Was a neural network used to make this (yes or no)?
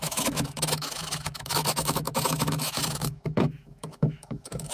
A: yes